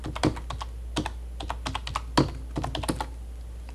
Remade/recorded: recorded